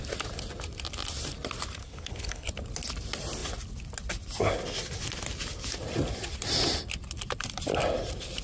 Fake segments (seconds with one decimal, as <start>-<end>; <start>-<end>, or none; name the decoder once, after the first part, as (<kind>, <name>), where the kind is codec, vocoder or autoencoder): 1.8-2.5 (codec, HILCodec)